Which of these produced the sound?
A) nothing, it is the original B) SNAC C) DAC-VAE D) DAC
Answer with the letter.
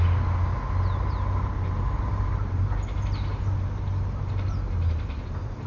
A